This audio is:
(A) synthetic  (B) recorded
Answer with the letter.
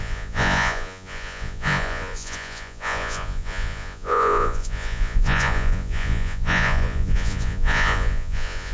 A